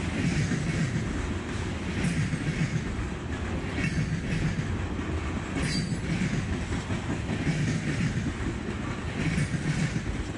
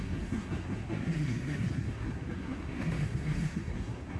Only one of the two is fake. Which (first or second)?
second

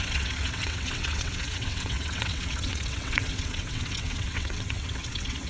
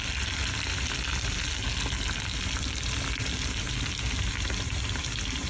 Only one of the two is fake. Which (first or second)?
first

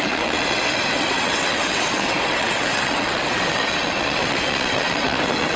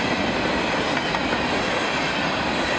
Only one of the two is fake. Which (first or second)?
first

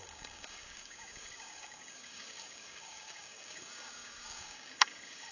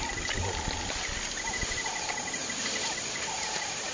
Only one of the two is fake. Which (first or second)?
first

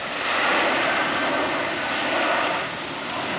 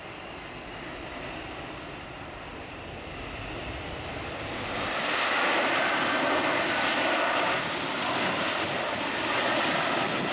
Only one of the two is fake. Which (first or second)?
first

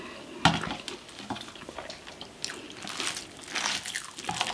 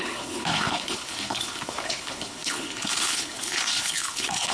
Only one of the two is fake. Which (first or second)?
second